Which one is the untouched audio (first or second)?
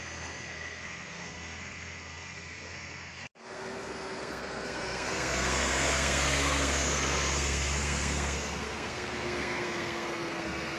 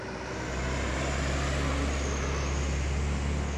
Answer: second